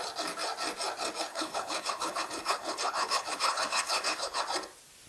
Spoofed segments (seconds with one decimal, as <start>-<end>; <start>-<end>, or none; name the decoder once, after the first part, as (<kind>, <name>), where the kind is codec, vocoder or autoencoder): 1.3-4.4 (codec, HILCodec)